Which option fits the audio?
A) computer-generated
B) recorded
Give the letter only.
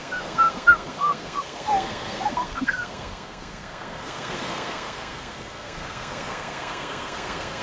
A